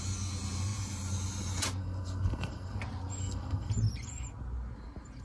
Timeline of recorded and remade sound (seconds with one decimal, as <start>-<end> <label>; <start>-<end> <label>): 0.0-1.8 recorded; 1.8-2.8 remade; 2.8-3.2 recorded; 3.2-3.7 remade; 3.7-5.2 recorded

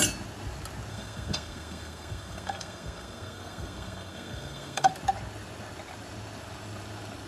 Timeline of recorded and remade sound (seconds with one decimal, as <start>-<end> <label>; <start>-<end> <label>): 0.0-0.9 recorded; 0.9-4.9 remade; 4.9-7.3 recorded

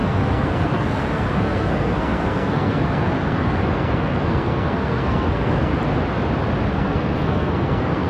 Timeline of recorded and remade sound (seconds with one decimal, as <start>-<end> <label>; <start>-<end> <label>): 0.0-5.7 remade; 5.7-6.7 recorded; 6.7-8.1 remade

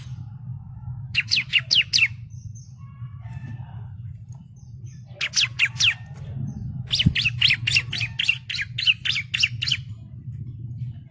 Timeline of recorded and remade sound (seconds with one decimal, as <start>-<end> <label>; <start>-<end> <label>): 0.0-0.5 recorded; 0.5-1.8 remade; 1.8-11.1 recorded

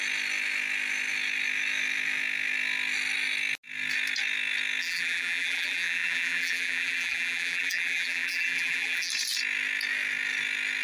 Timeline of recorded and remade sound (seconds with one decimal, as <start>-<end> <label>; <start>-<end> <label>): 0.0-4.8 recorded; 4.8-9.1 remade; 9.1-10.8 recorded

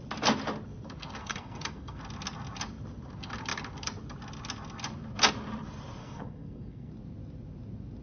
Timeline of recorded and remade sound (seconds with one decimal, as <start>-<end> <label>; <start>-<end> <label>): 0.0-1.2 recorded; 1.2-2.0 remade; 2.0-6.0 recorded; 6.0-6.9 remade; 6.9-8.0 recorded